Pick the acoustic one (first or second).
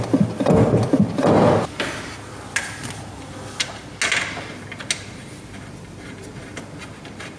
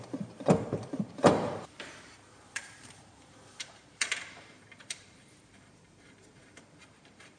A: first